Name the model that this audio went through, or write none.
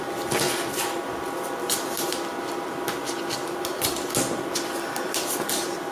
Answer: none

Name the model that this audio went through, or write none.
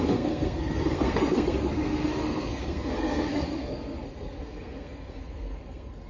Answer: codec, SNAC